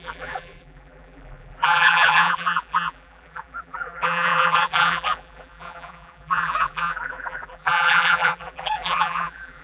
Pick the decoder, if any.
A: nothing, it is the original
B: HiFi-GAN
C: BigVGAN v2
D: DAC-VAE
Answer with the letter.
C